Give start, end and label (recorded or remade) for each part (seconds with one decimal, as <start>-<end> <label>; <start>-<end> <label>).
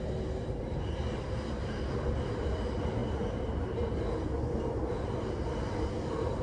0.0-6.4 recorded